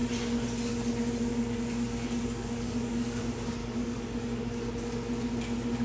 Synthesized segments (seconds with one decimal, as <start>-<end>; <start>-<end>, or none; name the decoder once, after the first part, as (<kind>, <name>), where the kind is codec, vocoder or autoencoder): 1.3-3.2 (codec, DAC); 3.6-4.7